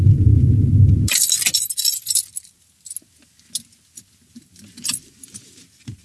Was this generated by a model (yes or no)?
no